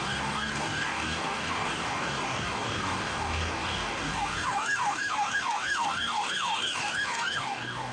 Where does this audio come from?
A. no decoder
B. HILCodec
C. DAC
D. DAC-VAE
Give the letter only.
C